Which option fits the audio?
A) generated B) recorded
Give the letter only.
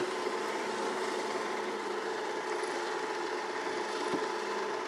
B